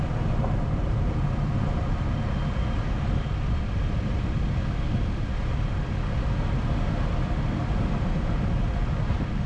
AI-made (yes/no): no